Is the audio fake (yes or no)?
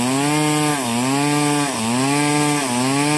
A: no